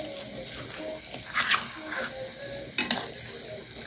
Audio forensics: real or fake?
real